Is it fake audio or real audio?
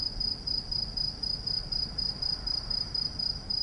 real